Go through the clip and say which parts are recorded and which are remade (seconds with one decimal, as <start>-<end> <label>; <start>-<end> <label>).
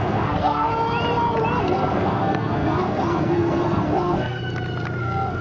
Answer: 0.0-0.7 remade; 0.7-1.6 recorded; 1.6-4.4 remade; 4.4-5.0 recorded; 5.0-5.4 remade